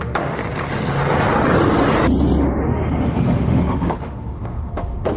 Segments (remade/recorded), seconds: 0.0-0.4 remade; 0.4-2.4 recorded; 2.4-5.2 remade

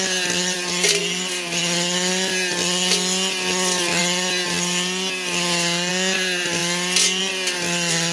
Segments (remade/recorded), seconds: 0.0-8.1 recorded

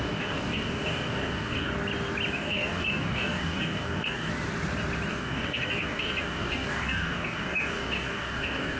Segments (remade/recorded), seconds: 0.0-1.7 remade; 1.7-2.3 recorded; 2.3-4.3 remade; 4.3-5.1 recorded; 5.1-8.8 remade

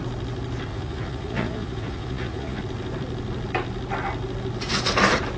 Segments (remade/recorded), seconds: 0.0-0.7 recorded; 0.7-2.6 remade; 2.6-5.4 recorded

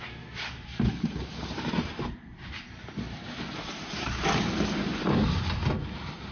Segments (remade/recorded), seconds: 0.0-0.7 recorded; 0.7-4.5 remade; 4.5-6.3 recorded

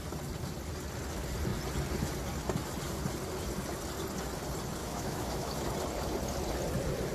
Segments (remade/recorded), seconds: 0.0-4.8 recorded; 4.8-5.7 remade; 5.7-7.1 recorded

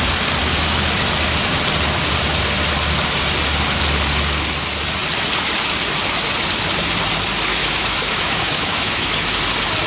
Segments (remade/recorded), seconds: 0.0-7.5 recorded; 7.5-9.1 remade; 9.1-9.9 recorded